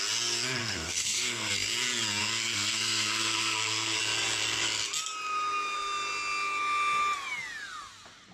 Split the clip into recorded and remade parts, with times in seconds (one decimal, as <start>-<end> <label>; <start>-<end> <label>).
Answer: 0.0-0.6 recorded; 0.6-1.5 remade; 1.5-2.2 recorded; 2.2-4.0 remade; 4.0-8.3 recorded